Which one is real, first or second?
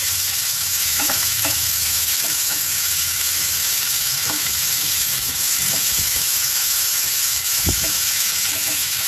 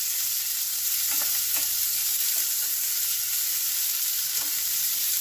second